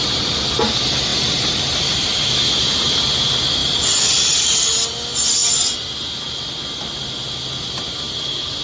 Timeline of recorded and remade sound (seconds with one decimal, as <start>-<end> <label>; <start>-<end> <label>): 0.0-1.1 recorded; 1.1-2.1 remade; 2.1-3.6 recorded; 3.6-4.6 remade; 4.6-8.6 recorded